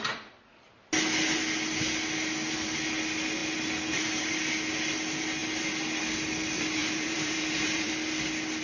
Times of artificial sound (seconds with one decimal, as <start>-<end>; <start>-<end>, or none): 6.8-7.9